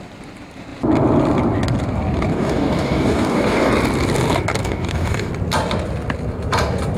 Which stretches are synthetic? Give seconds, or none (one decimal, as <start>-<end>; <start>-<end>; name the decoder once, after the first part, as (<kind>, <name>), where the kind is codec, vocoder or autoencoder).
2.3-3.7 (codec, DAC); 4.6-5.3